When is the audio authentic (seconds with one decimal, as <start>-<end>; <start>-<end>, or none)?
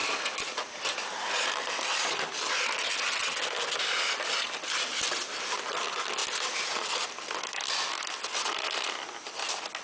4.9-9.8